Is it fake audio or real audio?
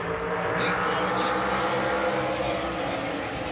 real